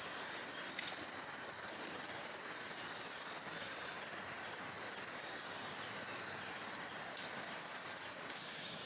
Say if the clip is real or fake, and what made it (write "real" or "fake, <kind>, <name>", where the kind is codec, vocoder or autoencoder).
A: real